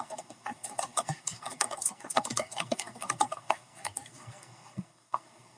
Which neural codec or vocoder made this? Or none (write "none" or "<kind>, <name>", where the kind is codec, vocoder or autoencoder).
codec, SNAC